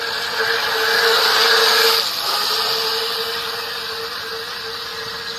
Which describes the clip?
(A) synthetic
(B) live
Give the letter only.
B